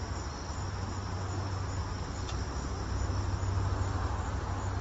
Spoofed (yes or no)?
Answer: no